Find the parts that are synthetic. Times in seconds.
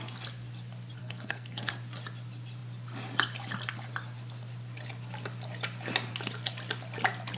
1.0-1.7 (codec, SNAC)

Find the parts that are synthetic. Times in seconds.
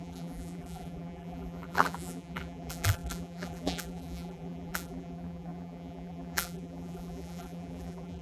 0.0-8.2 (vocoder, BigVGAN v2)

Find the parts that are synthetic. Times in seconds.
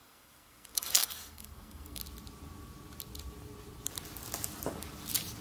0.0-2.0 (codec, SNAC)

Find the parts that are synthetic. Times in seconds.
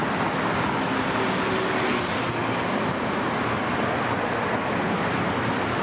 none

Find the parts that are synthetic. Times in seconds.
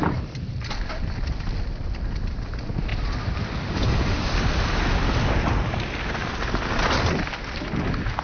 none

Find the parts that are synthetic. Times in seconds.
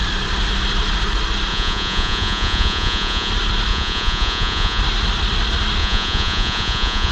1.5-3.3 (vocoder, Vocos); 3.7-4.8; 5.8-7.1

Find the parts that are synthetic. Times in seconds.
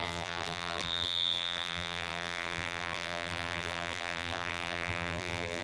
0.0-5.6 (vocoder, BigVGAN v2)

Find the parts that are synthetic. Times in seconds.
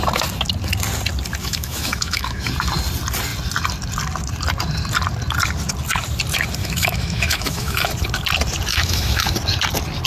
1.4-2.5 (autoencoder, DAC-VAE); 6.6-7.9; 8.7-9.3